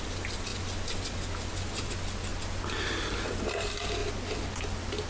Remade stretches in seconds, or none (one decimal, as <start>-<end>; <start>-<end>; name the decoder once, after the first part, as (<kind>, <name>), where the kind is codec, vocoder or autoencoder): none